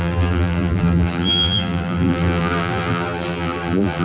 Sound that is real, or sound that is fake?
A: fake